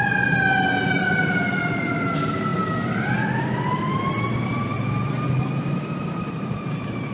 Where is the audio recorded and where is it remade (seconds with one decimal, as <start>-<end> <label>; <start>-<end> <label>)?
0.0-7.1 recorded